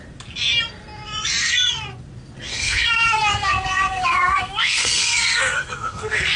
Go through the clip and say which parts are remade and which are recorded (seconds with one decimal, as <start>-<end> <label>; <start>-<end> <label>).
0.0-1.4 recorded; 1.4-1.9 remade; 1.9-2.5 recorded; 2.5-6.4 remade